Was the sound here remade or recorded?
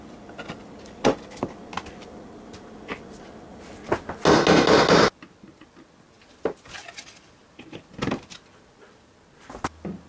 recorded